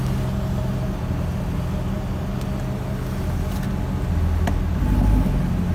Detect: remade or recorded recorded